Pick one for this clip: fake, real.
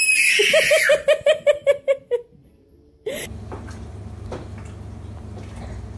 real